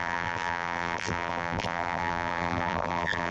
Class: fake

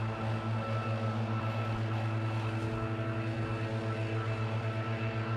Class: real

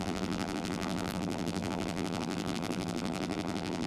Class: fake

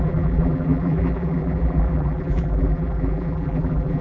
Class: fake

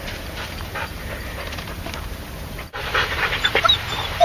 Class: fake